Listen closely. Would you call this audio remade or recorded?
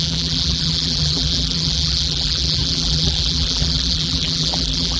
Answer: remade